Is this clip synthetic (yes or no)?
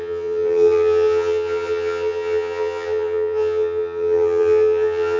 yes